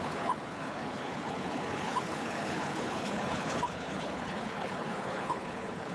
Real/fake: fake